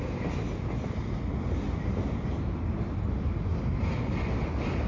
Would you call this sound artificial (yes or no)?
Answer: no